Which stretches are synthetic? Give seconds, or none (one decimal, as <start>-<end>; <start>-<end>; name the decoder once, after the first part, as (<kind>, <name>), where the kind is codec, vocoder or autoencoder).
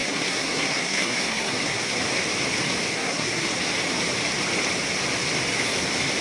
0.0-2.0 (codec, SNAC); 2.9-3.5